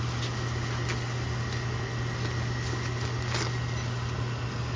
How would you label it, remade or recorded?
recorded